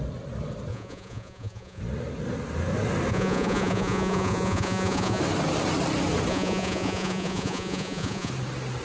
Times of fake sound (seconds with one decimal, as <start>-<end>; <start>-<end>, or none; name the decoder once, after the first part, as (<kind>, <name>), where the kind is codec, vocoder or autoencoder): 0.7-1.8 (vocoder, Vocos); 3.1-5.2; 6.3-8.3